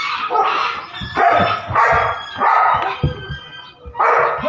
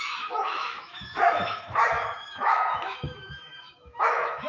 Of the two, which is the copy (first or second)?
second